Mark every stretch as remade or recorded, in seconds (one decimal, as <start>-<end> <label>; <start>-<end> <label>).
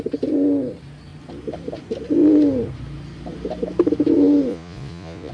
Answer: 0.0-4.5 recorded; 4.5-5.3 remade